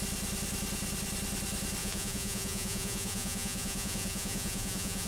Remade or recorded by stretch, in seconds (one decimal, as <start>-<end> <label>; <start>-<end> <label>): 0.0-1.8 recorded; 1.8-5.1 remade